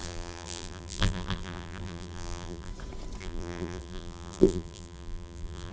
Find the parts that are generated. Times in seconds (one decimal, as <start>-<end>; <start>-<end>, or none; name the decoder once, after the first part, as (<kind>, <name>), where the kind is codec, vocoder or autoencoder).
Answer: 0.0-2.7 (vocoder, BigVGAN v2); 3.2-5.7